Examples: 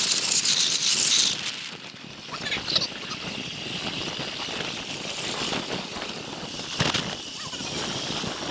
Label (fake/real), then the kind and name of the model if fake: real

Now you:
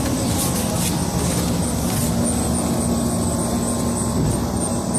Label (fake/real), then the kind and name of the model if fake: real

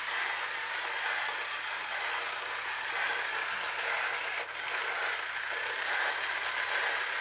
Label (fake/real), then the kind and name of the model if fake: real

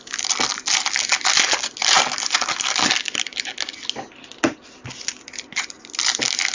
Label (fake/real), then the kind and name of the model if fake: real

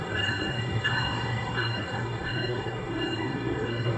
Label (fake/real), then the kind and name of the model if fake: fake, codec, SNAC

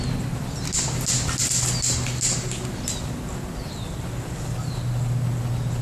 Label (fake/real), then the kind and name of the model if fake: real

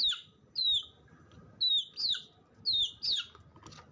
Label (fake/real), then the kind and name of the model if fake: real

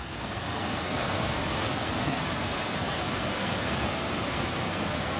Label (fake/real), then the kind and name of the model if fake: fake, codec, SNAC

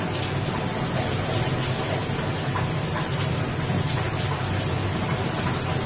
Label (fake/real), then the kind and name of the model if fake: real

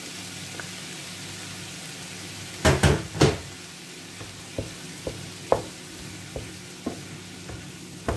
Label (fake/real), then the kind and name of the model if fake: real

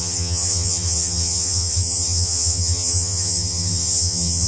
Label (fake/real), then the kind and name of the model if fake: fake, vocoder, HiFi-GAN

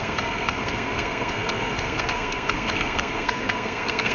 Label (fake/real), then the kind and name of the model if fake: fake, codec, SNAC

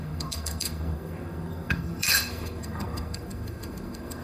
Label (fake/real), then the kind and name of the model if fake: fake, codec, SNAC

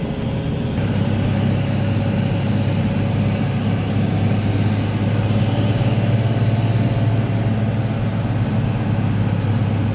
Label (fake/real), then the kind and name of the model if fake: real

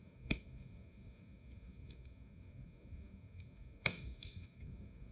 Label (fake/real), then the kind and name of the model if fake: fake, codec, DAC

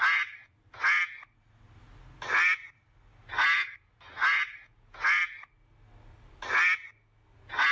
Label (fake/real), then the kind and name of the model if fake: real